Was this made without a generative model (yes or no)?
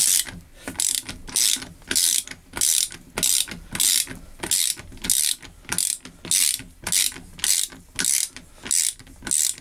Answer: yes